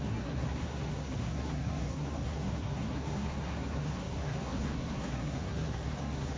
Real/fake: fake